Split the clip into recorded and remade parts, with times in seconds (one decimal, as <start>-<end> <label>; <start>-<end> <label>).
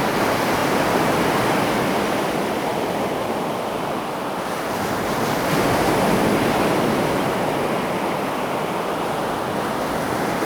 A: 0.0-0.6 recorded; 0.6-1.7 remade; 1.7-10.4 recorded